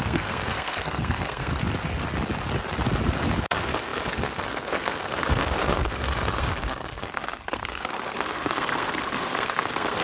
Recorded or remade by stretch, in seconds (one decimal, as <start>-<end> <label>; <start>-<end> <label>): 0.0-1.5 remade; 1.5-3.4 recorded; 3.4-10.0 remade